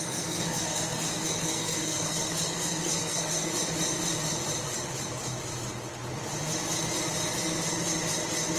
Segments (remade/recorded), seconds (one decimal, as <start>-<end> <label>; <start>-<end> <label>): 0.0-3.5 remade; 3.5-8.6 recorded